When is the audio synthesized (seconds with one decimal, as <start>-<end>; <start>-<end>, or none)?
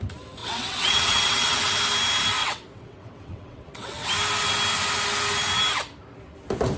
0.4-1.7; 2.4-4.1